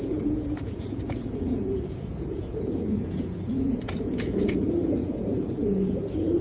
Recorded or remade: remade